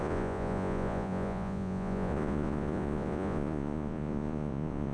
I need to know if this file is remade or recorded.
remade